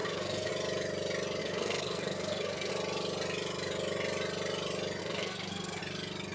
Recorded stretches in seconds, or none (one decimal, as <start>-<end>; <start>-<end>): 0.5-1.4; 2.7-5.0; 5.8-6.3